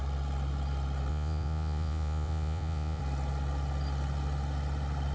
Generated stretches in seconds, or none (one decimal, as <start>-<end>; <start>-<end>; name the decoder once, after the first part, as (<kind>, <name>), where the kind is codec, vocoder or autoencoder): 1.1-3.0 (vocoder, Vocos)